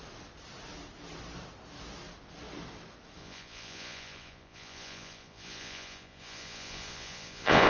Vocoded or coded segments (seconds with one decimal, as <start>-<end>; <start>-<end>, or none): 3.2-7.7